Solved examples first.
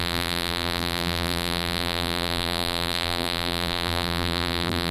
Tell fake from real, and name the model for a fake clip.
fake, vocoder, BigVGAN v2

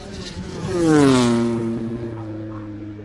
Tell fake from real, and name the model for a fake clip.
fake, vocoder, Vocos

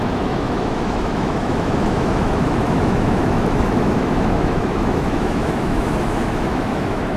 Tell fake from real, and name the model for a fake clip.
fake, autoencoder, DAC-VAE